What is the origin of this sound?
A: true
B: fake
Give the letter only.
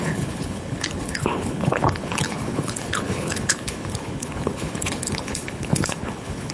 B